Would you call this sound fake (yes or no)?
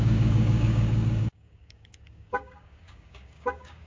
yes